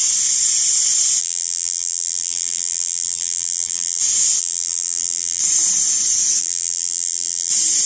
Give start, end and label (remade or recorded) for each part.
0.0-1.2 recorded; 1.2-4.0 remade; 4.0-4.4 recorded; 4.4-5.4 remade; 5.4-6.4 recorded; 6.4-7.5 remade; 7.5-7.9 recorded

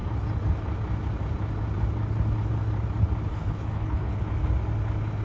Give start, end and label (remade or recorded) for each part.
0.0-3.3 recorded; 3.3-4.2 remade; 4.2-5.2 recorded

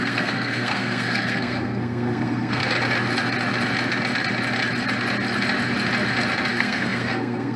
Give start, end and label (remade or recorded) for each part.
0.0-2.6 remade; 2.6-6.5 recorded; 6.5-7.6 remade

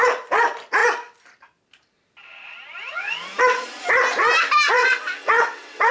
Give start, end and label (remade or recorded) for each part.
0.0-4.8 recorded; 4.8-5.9 remade

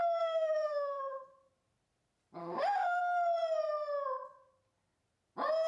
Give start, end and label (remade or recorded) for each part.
0.0-1.2 remade; 1.2-2.4 recorded; 2.4-3.0 remade; 3.0-5.7 recorded